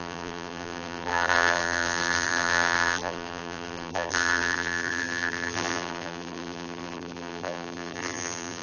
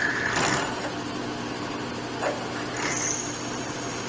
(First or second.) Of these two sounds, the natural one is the second